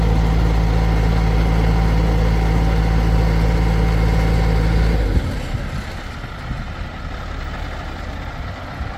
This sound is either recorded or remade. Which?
recorded